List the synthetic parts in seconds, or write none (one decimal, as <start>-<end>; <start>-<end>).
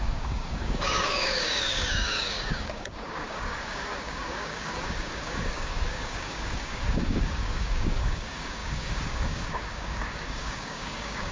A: 0.0-11.3